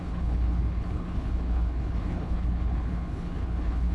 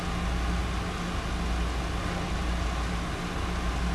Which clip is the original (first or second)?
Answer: second